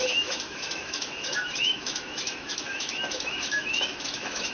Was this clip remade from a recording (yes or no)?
yes